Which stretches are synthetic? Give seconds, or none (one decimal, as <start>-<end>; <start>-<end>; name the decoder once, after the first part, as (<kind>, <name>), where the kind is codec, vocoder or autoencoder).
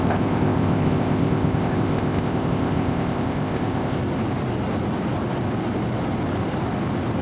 0.0-4.0 (codec, ZipCodec)